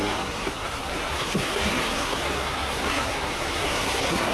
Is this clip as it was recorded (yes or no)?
no